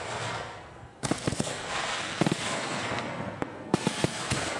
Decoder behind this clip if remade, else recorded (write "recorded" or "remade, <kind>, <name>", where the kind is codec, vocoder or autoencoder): remade, codec, SNAC